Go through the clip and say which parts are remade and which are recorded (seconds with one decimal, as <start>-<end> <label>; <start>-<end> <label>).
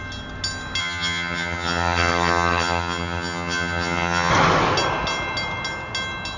0.0-0.8 recorded; 0.8-4.3 remade; 4.3-6.4 recorded